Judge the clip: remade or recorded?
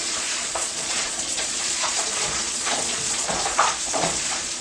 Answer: remade